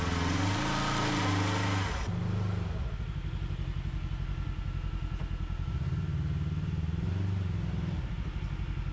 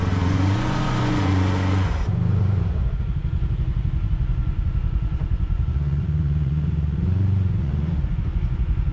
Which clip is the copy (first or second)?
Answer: second